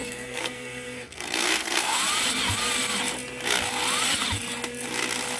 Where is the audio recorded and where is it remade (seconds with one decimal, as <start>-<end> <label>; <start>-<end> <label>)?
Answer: 0.0-2.0 remade; 2.0-5.4 recorded